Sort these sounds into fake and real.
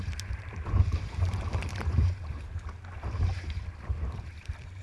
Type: fake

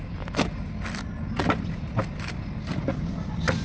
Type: real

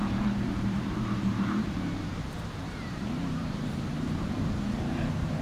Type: fake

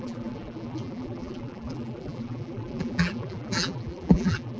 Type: fake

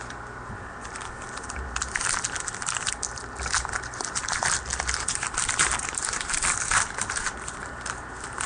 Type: fake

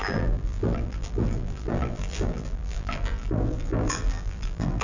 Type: fake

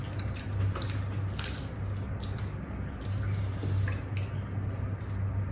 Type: real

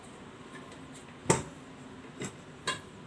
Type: real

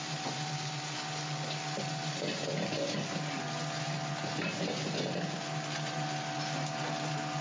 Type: real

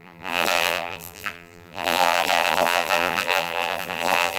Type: fake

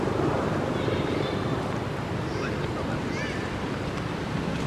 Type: real